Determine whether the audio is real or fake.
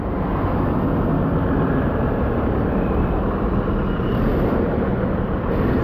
real